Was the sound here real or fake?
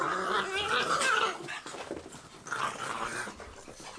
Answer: real